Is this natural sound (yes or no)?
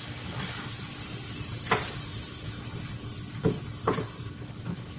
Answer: yes